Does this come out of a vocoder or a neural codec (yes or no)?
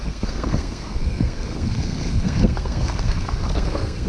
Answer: yes